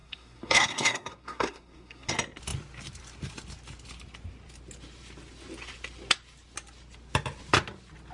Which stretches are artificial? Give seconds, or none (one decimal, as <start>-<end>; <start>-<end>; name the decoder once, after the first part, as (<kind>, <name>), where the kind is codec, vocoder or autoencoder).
0.0-2.1 (codec, SNAC)